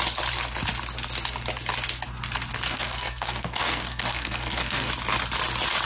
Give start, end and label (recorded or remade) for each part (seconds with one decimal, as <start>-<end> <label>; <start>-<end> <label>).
0.0-2.7 recorded; 2.7-4.9 remade; 4.9-5.9 recorded